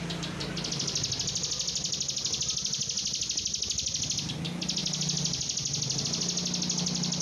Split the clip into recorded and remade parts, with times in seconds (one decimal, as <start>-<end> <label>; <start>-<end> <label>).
0.0-7.2 recorded